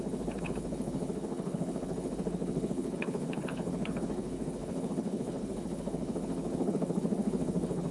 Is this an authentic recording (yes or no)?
no